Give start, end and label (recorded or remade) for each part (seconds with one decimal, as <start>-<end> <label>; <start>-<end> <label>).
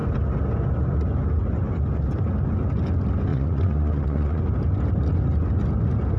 0.0-3.3 recorded; 3.3-4.4 remade; 4.4-6.2 recorded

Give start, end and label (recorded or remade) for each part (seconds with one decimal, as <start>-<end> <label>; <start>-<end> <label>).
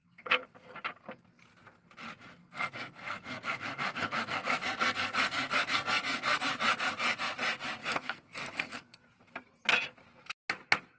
0.0-0.5 remade; 0.5-2.4 recorded; 2.4-6.4 remade; 6.4-7.8 recorded; 7.8-9.0 remade; 9.0-11.0 recorded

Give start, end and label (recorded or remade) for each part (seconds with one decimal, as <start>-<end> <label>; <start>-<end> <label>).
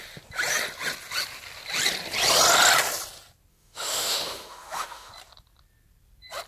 0.0-3.5 recorded; 3.5-5.1 remade; 5.1-6.5 recorded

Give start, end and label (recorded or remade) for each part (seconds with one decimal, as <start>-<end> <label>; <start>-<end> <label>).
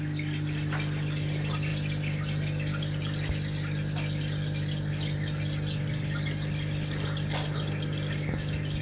0.0-8.8 recorded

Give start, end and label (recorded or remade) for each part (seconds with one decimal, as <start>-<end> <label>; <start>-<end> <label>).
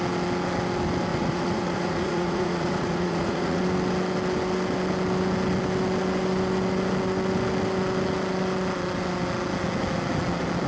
0.0-1.1 recorded; 1.1-3.6 remade; 3.6-10.7 recorded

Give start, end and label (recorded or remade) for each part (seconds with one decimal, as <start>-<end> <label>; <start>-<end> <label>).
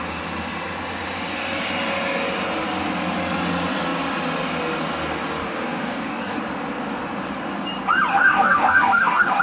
0.0-5.4 recorded; 5.4-6.4 remade; 6.4-8.1 recorded; 8.1-9.4 remade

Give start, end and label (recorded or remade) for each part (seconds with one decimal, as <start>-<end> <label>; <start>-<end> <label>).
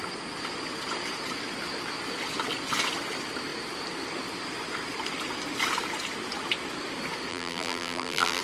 0.0-7.3 recorded; 7.3-8.4 remade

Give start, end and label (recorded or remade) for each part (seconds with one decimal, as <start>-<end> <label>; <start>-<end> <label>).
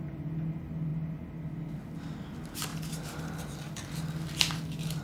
0.0-5.0 recorded